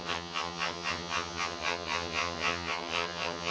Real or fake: fake